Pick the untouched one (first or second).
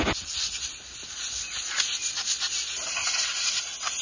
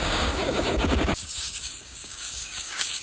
first